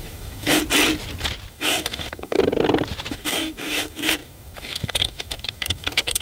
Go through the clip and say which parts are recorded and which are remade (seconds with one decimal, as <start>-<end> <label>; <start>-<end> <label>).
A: 0.0-0.6 remade; 0.6-1.5 recorded; 1.5-2.4 remade; 2.4-3.1 recorded; 3.1-6.2 remade